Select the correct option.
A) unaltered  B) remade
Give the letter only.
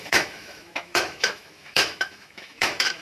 B